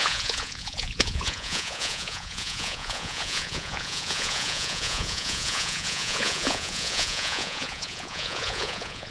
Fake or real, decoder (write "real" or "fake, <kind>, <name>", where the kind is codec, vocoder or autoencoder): fake, vocoder, Vocos